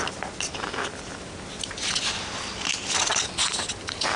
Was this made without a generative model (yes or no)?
yes